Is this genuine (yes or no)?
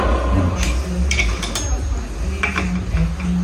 yes